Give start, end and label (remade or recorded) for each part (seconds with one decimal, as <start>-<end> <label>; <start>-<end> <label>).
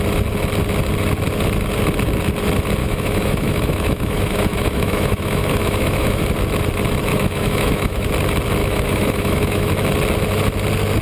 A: 0.0-2.8 recorded; 2.8-6.2 remade; 6.2-7.1 recorded; 7.1-8.1 remade; 8.1-8.6 recorded; 8.6-9.7 remade; 9.7-11.0 recorded